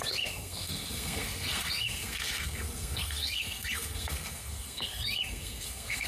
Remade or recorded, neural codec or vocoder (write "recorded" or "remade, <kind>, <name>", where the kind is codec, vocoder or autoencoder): remade, codec, SNAC